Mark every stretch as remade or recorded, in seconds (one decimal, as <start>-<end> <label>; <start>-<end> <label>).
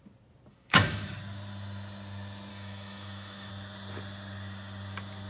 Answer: 0.0-0.5 recorded; 0.5-1.1 remade; 1.1-2.5 recorded; 2.5-3.5 remade; 3.5-5.3 recorded